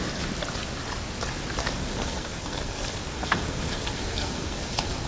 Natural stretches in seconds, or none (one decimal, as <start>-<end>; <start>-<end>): 0.0-1.6